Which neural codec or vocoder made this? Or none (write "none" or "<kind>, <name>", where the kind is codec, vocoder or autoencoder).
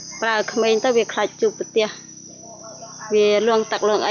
none